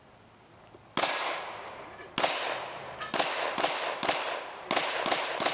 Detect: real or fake real